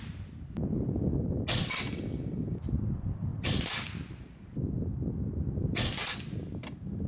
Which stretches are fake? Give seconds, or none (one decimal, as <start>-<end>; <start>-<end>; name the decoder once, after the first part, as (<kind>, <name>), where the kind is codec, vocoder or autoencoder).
none